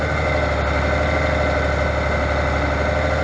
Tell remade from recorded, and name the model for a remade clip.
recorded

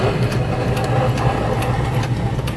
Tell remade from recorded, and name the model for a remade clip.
recorded